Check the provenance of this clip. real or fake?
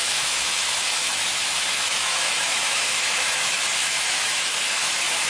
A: fake